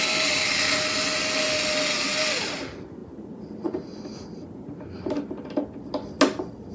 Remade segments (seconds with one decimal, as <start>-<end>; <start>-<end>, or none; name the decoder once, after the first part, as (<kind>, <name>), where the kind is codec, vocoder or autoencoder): none